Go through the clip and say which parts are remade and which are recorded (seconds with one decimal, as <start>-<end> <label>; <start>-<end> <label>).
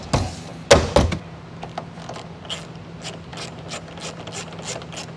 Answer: 0.0-5.2 recorded